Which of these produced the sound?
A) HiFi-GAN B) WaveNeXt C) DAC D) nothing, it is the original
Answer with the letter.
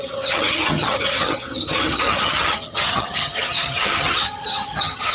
A